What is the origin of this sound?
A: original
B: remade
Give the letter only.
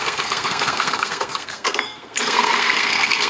B